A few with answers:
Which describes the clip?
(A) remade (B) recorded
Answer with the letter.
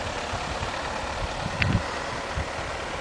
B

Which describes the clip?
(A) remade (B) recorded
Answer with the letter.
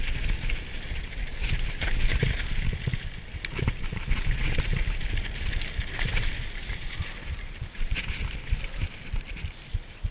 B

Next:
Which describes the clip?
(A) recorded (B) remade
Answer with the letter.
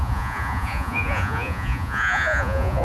B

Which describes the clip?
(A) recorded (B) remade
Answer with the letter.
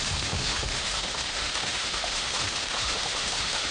B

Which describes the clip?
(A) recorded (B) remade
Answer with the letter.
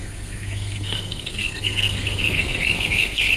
B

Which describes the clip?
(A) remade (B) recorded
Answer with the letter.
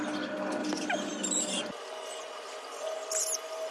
B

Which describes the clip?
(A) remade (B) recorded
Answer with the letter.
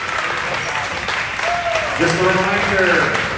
B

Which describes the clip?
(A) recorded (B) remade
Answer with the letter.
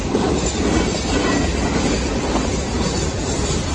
A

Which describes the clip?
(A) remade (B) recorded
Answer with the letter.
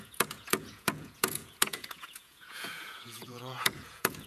A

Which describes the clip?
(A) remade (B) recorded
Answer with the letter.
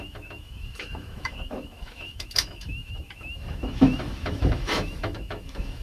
A